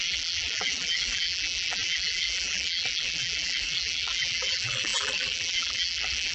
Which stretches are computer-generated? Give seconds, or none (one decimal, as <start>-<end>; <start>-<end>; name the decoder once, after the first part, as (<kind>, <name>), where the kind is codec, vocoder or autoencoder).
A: 0.0-6.3 (vocoder, BigVGAN v2)